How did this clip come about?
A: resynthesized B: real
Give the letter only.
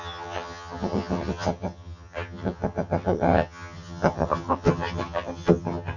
A